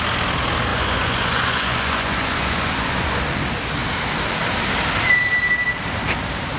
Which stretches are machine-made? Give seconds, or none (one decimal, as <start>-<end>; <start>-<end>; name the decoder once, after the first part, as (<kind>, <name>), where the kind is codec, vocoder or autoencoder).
0.7-3.2 (vocoder, Vocos)